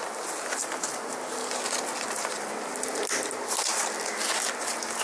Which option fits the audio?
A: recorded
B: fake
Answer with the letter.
A